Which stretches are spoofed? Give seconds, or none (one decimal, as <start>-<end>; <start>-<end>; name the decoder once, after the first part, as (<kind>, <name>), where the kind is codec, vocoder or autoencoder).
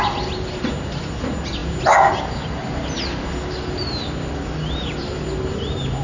none